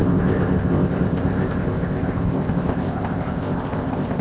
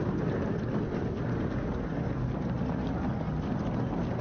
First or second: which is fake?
first